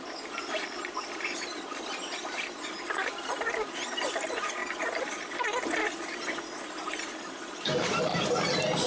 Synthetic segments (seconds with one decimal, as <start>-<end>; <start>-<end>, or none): none